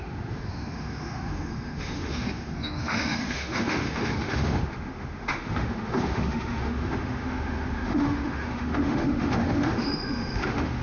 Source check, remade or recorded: remade